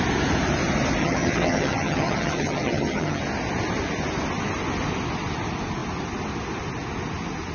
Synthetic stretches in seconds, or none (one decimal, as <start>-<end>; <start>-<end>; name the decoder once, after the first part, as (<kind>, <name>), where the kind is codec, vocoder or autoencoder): 1.0-3.2 (vocoder, HiFi-GAN)

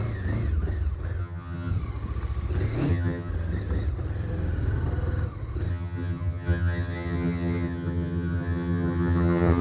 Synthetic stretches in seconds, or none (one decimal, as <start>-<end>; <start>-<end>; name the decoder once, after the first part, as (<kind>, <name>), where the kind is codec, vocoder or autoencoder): 1.2-1.7 (vocoder, HiFi-GAN); 2.9-3.3; 5.7-9.6

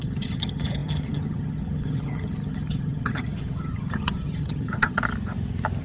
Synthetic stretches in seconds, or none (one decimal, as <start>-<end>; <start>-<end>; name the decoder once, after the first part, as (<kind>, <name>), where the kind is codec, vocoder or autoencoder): 0.0-5.0 (vocoder, HiFi-GAN)

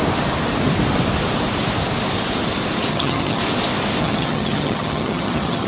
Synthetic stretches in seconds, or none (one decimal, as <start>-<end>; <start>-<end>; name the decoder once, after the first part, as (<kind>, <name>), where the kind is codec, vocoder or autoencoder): 2.9-3.4 (vocoder, HiFi-GAN); 4.0-5.7

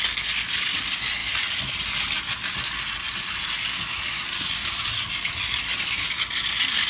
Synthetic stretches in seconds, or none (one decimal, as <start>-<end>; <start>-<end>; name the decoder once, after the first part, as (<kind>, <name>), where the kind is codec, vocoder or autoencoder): none

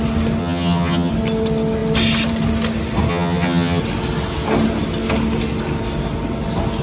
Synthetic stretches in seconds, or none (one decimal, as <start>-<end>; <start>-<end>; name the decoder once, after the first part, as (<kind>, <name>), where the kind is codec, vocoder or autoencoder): 0.4-1.1 (vocoder, HiFi-GAN); 3.1-3.8

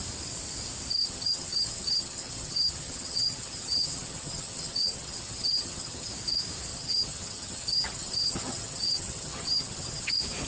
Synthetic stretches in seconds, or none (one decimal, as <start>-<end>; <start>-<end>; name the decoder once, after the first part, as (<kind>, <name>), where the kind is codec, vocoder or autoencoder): 1.0-6.1 (vocoder, HiFi-GAN); 6.7-10.1

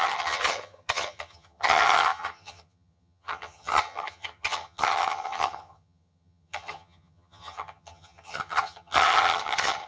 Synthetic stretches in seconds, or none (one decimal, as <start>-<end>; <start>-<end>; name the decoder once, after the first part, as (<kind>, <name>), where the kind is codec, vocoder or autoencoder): 0.0-9.9 (vocoder, HiFi-GAN)